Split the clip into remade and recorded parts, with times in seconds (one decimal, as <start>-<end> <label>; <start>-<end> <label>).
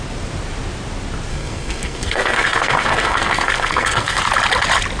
0.0-1.3 recorded; 1.3-4.2 remade; 4.2-5.0 recorded